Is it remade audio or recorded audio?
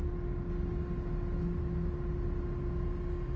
recorded